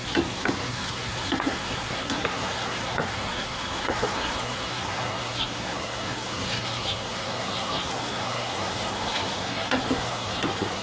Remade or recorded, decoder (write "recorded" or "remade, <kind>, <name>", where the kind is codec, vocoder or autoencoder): remade, codec, SNAC